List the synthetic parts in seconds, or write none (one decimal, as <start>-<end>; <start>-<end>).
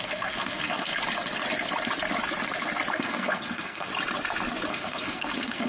0.0-0.9; 2.9-3.9; 4.7-5.7